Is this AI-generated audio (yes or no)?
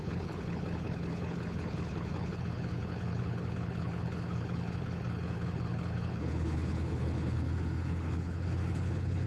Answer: yes